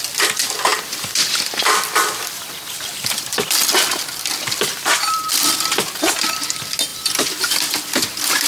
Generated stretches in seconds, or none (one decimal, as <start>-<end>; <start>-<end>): 0.7-5.5